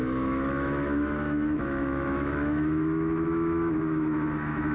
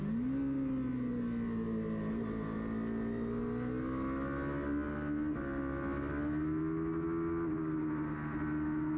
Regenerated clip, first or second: first